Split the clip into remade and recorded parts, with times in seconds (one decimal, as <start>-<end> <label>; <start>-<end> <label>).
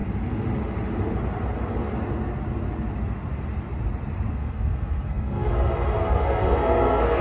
0.0-4.3 recorded; 4.3-5.5 remade; 5.5-6.0 recorded; 6.0-7.2 remade